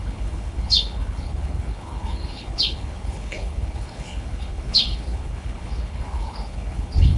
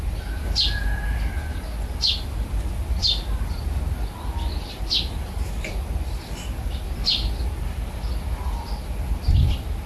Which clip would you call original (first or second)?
second